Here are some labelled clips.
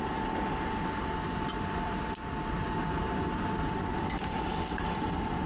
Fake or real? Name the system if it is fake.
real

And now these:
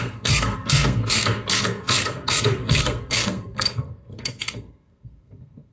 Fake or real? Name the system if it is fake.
fake, codec, SNAC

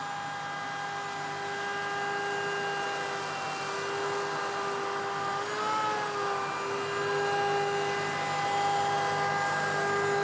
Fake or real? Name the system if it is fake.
real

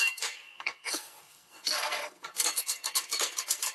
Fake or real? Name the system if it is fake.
fake, codec, SNAC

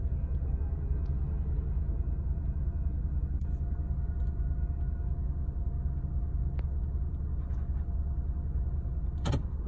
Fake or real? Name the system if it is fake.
real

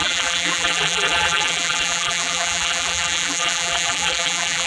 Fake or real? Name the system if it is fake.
fake, vocoder, BigVGAN v2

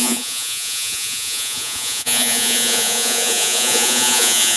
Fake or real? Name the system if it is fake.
fake, vocoder, Vocos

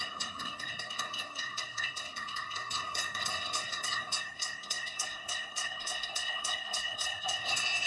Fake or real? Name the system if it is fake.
fake, codec, SNAC